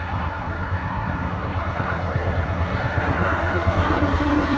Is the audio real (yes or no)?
no